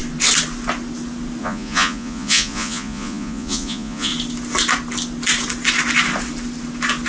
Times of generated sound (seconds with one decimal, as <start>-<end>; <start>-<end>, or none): 1.4-4.1